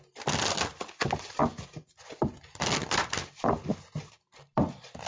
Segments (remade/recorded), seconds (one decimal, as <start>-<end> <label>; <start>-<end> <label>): 0.0-5.1 recorded